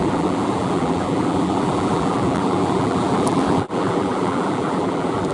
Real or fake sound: fake